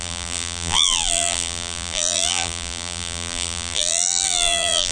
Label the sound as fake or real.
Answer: fake